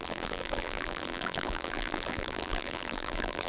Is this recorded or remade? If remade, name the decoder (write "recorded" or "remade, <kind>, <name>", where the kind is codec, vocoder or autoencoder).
remade, vocoder, BigVGAN v2